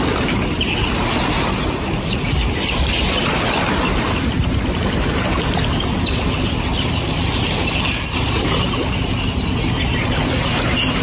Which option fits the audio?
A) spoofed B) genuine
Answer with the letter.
B